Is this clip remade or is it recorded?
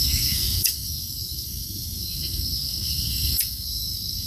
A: remade